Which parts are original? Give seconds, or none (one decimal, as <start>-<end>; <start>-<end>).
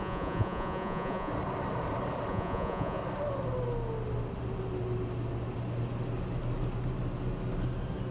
1.3-2.3; 3.0-8.1